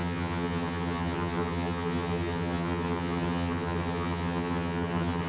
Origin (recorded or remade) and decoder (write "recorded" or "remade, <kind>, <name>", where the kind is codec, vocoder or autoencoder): remade, vocoder, HiFi-GAN